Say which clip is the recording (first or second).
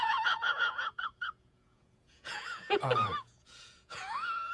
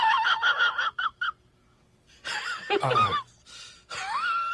second